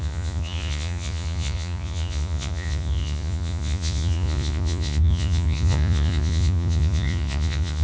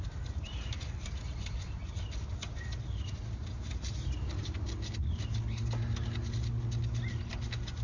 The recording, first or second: second